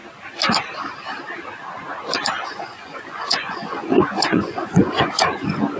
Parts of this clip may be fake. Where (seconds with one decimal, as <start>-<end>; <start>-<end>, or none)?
2.5-5.8